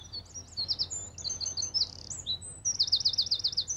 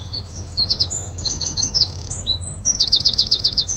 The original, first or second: first